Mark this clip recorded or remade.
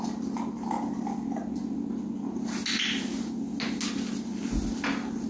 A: recorded